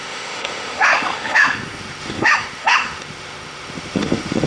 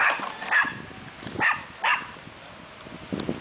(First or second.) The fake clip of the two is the first